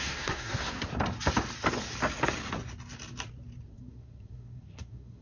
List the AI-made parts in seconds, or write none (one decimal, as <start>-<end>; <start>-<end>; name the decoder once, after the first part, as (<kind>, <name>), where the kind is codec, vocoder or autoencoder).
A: 0.0-0.9 (codec, SNAC); 3.7-5.2